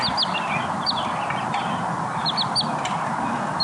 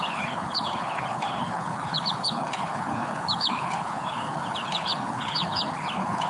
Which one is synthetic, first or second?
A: second